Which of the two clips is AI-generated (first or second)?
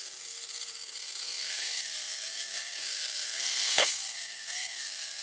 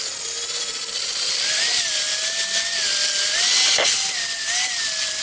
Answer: first